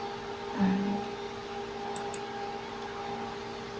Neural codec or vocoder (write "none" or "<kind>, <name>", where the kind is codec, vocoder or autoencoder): none